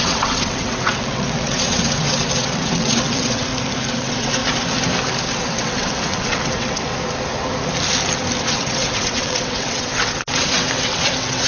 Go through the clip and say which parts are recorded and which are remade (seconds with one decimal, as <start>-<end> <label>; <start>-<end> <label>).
0.0-3.5 remade; 3.5-4.0 recorded; 4.0-4.4 remade; 4.4-5.4 recorded; 5.4-6.9 remade; 6.9-8.4 recorded; 8.4-11.5 remade